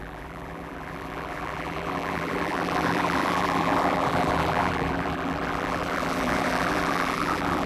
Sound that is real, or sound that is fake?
fake